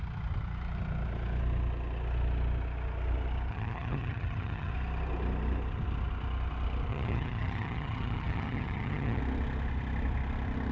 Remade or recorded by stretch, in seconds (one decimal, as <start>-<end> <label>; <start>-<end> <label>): 0.0-3.5 recorded; 3.5-4.7 remade; 4.7-6.9 recorded; 6.9-9.2 remade; 9.2-10.7 recorded